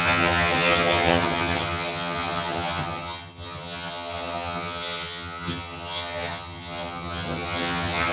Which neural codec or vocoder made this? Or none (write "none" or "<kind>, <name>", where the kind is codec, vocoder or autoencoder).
vocoder, HiFi-GAN